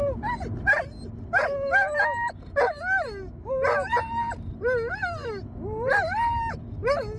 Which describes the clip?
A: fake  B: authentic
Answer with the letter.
B